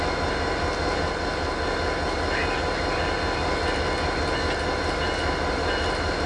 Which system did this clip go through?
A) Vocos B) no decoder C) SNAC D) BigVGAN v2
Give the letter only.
B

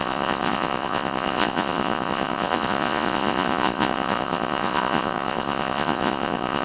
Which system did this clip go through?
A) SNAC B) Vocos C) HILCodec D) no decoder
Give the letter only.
B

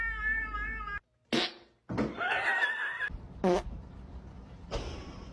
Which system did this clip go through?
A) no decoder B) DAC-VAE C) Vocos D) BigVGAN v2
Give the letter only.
A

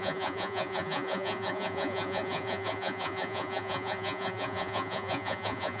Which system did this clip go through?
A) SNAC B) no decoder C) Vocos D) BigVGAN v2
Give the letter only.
C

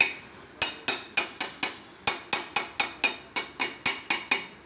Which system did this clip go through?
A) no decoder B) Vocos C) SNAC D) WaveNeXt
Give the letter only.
A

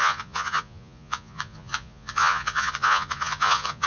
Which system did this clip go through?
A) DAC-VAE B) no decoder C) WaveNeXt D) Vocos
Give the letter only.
D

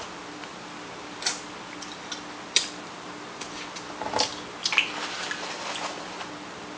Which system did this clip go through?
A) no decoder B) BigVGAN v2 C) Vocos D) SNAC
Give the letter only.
A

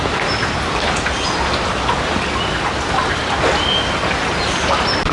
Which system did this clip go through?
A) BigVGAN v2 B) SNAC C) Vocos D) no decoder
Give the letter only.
D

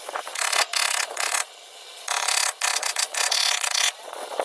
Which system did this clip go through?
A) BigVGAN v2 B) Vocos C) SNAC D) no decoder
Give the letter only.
B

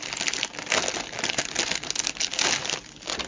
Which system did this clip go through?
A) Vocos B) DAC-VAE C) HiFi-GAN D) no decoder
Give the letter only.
D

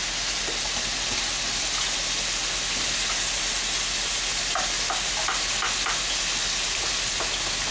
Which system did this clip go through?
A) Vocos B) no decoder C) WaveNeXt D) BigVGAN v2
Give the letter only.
B